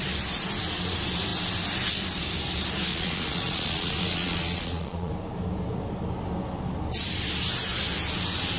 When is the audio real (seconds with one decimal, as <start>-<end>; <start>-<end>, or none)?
0.0-2.9; 5.1-8.6